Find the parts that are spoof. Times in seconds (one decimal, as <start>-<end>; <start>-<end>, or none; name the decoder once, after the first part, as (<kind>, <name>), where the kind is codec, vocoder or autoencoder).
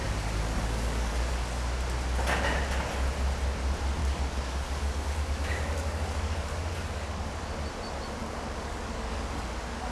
0.0-1.3 (codec, DAC); 4.0-7.3; 8.2-9.9